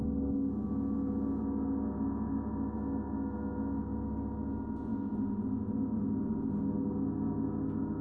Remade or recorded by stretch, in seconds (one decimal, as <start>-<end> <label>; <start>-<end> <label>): 0.0-8.0 recorded